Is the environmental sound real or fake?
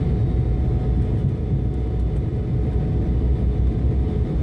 real